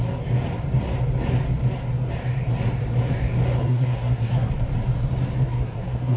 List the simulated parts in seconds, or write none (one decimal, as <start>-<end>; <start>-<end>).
3.6-4.5; 5.4-6.2